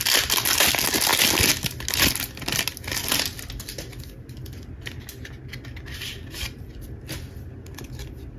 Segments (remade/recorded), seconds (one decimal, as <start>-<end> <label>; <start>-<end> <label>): 0.0-8.4 recorded

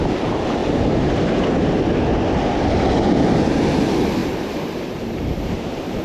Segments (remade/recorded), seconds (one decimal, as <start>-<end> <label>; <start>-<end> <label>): 0.0-4.2 recorded; 4.2-6.0 remade

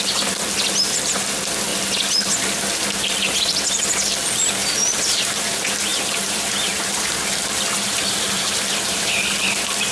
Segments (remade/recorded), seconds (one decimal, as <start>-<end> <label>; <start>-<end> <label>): 0.0-4.6 recorded; 4.6-5.4 remade; 5.4-5.9 recorded; 5.9-9.9 remade

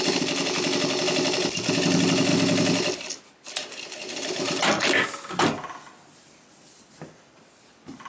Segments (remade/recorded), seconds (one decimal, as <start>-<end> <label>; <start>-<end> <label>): 0.0-8.1 recorded

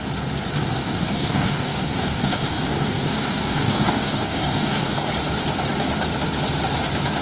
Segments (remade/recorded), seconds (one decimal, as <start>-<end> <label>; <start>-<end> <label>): 0.0-0.8 recorded; 0.8-5.1 remade; 5.1-7.2 recorded